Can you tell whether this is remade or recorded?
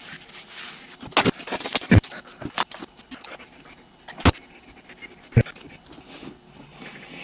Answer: recorded